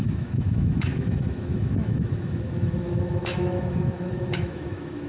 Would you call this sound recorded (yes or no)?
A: no